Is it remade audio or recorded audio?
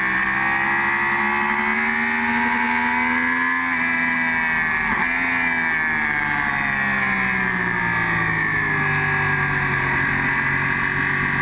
recorded